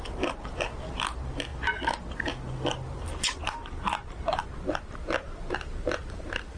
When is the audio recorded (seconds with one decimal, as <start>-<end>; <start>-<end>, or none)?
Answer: 0.0-6.6